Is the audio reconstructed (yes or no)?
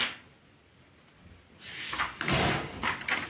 no